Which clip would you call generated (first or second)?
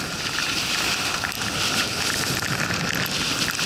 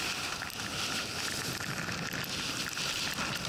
first